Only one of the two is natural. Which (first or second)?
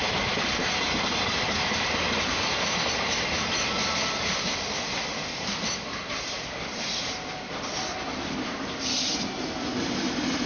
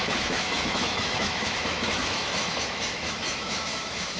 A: first